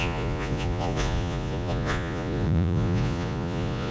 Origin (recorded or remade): remade